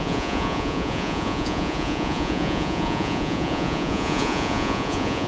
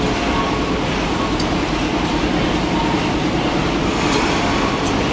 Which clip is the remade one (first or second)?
first